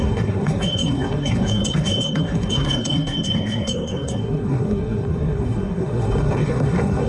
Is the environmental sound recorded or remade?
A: remade